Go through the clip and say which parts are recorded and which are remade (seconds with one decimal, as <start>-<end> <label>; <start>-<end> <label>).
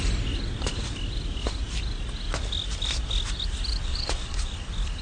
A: 0.0-3.9 recorded; 3.9-4.5 remade; 4.5-5.0 recorded